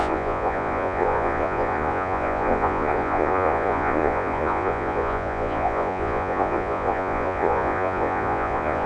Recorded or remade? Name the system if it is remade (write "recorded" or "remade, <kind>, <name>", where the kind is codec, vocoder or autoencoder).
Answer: remade, vocoder, Vocos